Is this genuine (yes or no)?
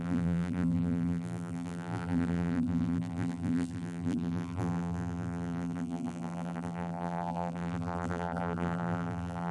no